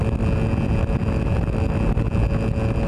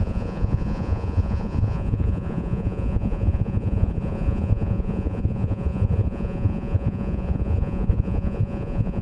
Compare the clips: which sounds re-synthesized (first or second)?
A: second